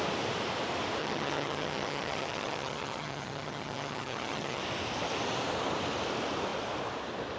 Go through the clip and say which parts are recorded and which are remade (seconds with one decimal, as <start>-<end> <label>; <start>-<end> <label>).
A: 0.0-1.0 recorded; 1.0-4.6 remade; 4.6-7.4 recorded